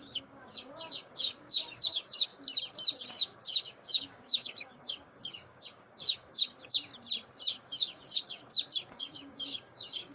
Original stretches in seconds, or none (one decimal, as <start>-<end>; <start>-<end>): 2.3-3.0; 6.7-7.5; 8.4-9.0